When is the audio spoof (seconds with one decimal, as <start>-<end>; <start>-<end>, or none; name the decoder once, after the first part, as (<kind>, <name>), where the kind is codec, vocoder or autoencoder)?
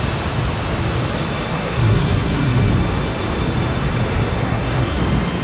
1.5-2.7 (codec, SNAC); 4.3-5.0